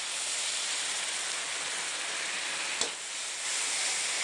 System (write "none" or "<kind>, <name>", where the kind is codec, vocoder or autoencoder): none